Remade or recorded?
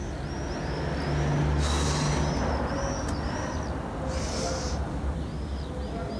recorded